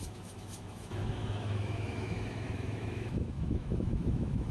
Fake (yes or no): yes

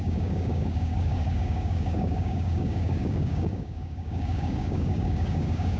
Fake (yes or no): yes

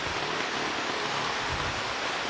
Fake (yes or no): no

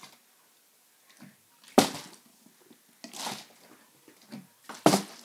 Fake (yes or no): no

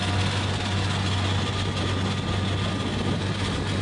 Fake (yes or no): no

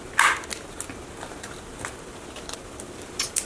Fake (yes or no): no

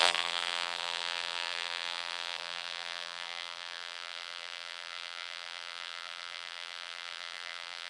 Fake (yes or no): yes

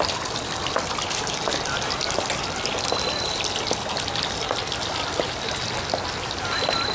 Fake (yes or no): no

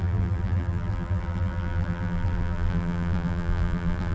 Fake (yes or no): yes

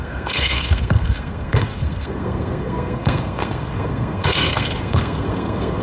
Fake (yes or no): yes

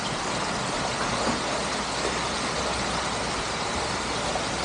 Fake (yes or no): no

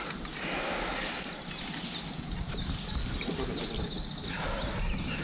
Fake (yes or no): no